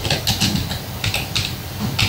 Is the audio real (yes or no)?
yes